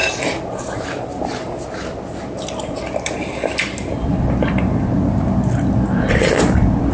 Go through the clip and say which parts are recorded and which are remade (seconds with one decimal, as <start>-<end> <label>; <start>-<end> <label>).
0.0-6.9 recorded